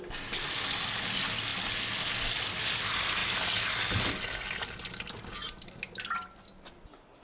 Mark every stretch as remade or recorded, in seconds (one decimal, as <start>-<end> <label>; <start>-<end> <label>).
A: 0.0-7.2 recorded